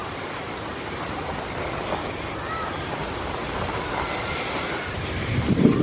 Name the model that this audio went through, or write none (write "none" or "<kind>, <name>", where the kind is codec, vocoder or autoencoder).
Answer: none